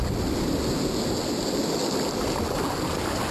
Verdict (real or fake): real